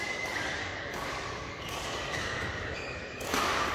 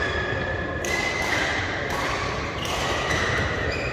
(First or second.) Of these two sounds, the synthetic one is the first